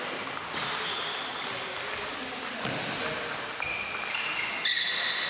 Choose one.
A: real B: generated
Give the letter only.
A